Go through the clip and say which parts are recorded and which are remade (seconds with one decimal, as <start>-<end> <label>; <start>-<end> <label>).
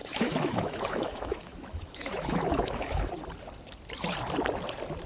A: 0.0-3.1 remade; 3.1-5.1 recorded